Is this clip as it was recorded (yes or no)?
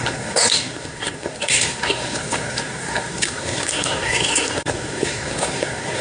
no